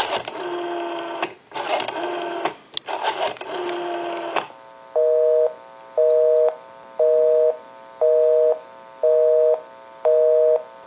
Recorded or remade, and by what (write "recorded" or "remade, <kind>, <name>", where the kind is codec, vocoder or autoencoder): recorded